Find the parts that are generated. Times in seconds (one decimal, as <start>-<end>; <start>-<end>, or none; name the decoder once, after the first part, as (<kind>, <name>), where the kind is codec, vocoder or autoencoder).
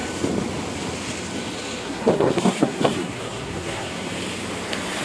1.8-4.1 (codec, SNAC)